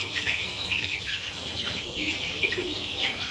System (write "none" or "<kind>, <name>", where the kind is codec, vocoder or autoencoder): codec, SNAC